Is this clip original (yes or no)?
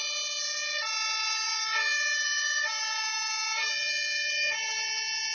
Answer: yes